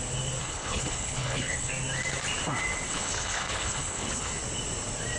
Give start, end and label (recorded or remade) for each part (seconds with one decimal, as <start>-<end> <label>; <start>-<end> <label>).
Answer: 0.0-0.4 recorded; 0.4-1.7 remade; 1.7-2.9 recorded; 2.9-4.3 remade; 4.3-5.2 recorded